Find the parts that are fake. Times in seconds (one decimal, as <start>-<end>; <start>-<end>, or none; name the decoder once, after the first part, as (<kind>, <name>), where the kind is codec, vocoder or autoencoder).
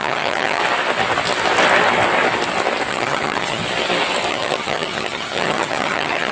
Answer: 0.0-0.6 (vocoder, HiFi-GAN); 2.9-3.6; 4.3-6.3